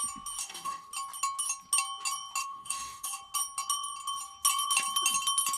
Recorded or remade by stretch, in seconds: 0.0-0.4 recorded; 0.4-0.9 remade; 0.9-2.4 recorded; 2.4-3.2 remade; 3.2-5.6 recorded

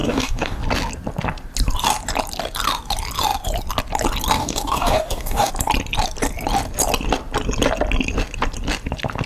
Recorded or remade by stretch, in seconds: 0.0-0.6 remade; 0.6-4.4 recorded; 4.4-5.5 remade; 5.5-9.3 recorded

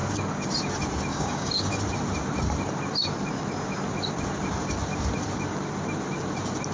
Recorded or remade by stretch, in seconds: 0.0-1.1 recorded; 1.1-1.8 remade; 1.8-6.7 recorded

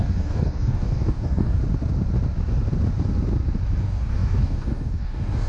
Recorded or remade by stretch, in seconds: 0.0-1.6 remade; 1.6-3.8 recorded; 3.8-5.5 remade

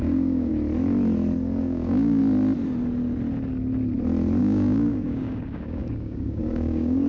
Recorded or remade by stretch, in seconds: 0.0-0.5 remade; 0.5-1.6 recorded; 1.6-2.2 remade; 2.2-4.4 recorded; 4.4-7.1 remade

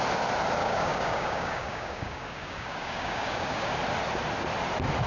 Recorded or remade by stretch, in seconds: 0.0-0.6 recorded; 0.6-3.7 remade; 3.7-5.1 recorded

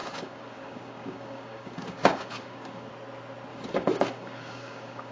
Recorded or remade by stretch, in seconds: 0.0-2.9 remade; 2.9-3.5 recorded; 3.5-5.1 remade

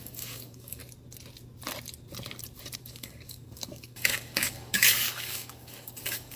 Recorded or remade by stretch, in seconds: 0.0-0.8 remade; 0.8-2.8 recorded; 2.8-6.4 remade